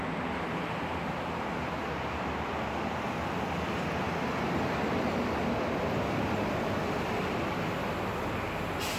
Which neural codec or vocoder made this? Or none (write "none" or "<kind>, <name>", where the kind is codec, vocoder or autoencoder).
none